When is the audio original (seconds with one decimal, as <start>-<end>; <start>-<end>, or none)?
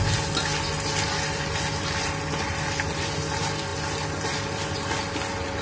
0.0-5.6